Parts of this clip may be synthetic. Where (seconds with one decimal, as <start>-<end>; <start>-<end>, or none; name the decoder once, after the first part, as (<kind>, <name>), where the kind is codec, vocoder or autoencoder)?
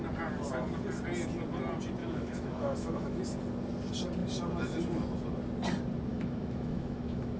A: 2.0-3.2 (autoencoder, DAC-VAE); 6.1-7.4